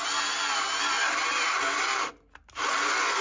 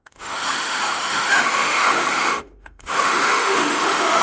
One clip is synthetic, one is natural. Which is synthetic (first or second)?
second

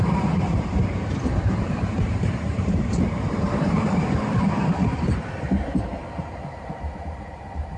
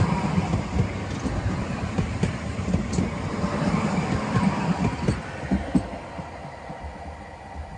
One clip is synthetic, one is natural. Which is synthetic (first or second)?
first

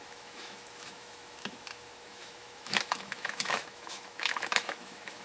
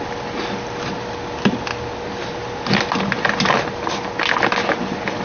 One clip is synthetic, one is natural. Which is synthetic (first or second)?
first